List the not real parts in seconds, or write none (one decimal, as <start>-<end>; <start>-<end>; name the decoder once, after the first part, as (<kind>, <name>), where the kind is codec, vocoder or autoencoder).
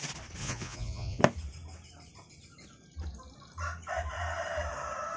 0.4-1.2 (vocoder, Vocos)